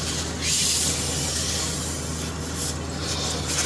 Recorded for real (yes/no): yes